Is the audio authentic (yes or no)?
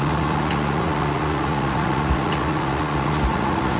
no